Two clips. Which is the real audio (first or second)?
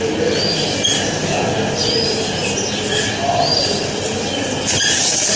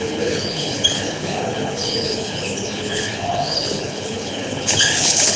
first